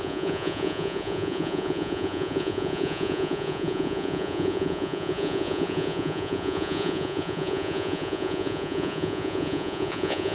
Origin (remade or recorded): remade